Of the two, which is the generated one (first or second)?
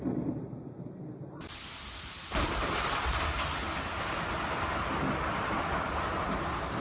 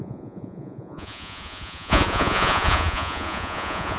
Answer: second